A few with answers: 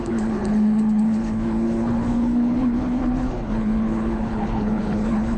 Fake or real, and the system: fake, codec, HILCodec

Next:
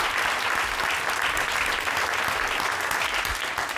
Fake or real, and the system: real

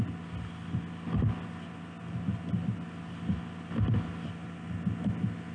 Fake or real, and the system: real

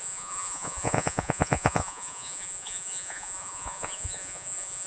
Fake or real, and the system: fake, vocoder, Vocos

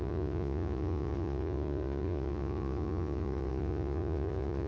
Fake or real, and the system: fake, vocoder, Vocos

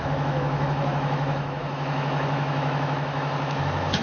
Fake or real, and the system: fake, autoencoder, DAC-VAE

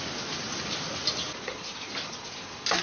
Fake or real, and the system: real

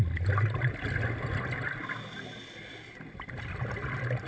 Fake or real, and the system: real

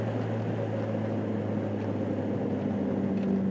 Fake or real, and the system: real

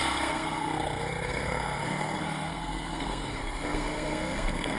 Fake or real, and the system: fake, codec, SNAC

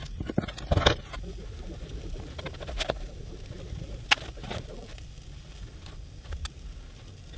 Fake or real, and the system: real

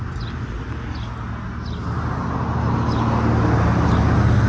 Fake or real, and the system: real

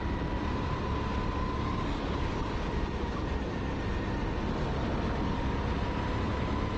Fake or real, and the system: real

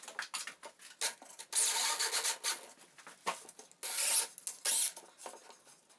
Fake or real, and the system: real